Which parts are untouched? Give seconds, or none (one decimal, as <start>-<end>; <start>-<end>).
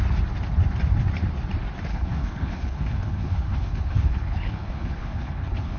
0.0-1.9